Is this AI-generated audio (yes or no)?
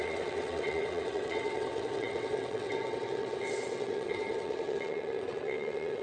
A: yes